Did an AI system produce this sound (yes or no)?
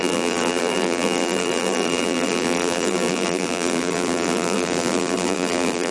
yes